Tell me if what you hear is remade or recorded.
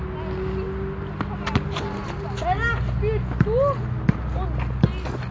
recorded